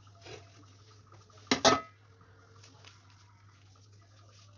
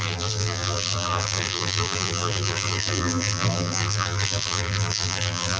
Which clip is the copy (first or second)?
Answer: second